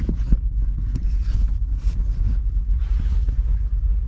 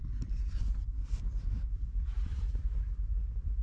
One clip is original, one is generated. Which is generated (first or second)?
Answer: second